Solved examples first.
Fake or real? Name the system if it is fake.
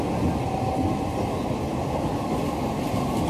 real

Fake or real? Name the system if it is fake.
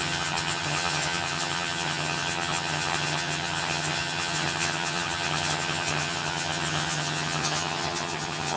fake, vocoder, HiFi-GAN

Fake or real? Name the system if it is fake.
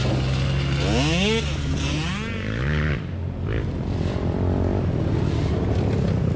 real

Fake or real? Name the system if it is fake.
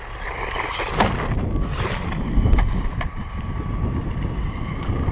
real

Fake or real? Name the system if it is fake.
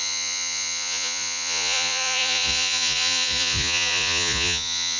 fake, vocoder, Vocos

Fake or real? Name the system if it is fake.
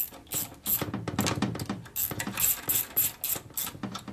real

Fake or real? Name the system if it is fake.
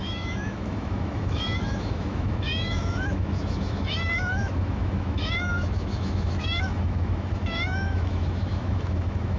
fake, autoencoder, DAC-VAE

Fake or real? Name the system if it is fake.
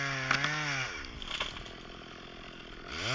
real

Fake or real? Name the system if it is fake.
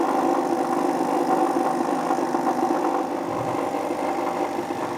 fake, vocoder, BigVGAN v2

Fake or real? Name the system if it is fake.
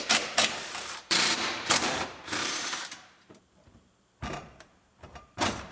fake, vocoder, BigVGAN v2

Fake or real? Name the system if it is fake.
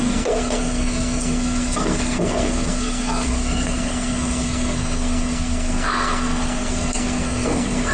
fake, codec, SNAC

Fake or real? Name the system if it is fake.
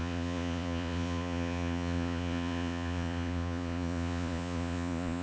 fake, vocoder, Vocos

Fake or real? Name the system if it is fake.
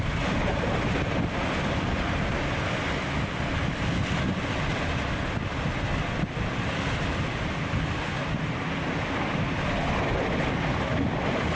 real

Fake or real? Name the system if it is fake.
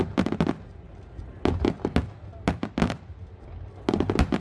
real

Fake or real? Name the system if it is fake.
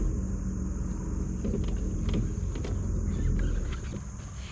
real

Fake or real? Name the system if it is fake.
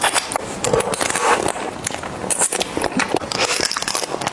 real